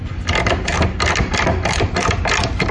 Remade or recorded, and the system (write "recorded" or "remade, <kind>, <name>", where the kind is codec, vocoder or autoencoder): recorded